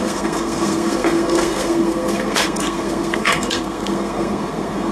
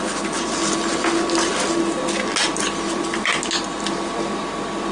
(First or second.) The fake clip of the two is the first